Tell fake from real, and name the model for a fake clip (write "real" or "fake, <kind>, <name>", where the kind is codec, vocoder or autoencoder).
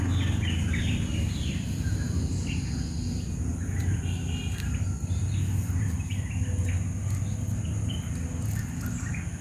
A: real